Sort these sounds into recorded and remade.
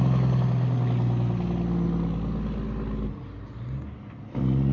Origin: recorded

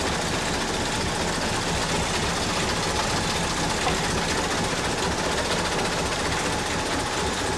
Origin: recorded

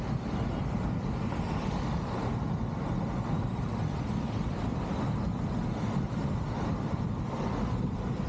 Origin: recorded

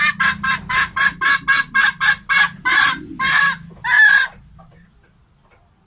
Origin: recorded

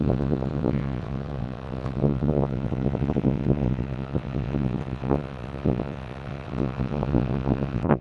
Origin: remade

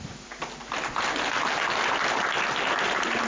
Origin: recorded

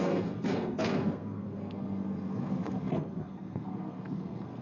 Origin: remade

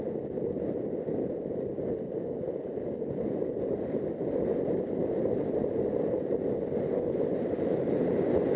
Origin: remade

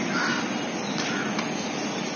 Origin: recorded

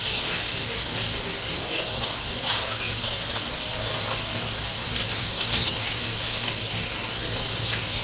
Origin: remade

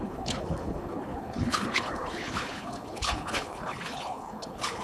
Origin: remade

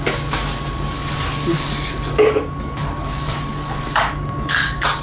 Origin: remade